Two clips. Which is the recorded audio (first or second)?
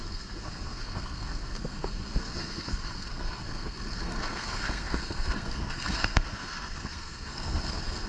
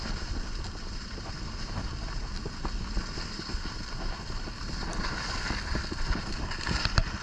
second